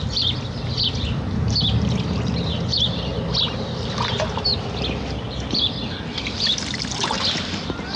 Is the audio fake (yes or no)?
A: no